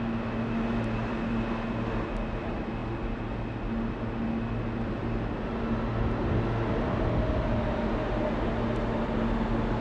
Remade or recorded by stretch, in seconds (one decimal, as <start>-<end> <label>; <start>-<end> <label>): 0.0-9.8 recorded